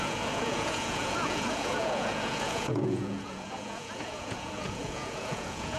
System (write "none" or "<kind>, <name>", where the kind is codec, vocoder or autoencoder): vocoder, Vocos